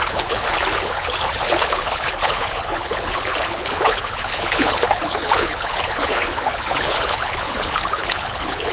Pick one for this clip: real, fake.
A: fake